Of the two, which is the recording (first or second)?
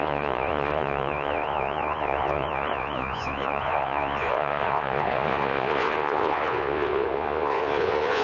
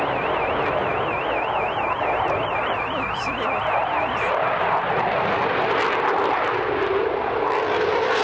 second